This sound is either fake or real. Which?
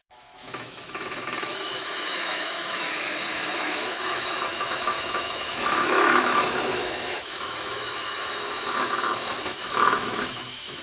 fake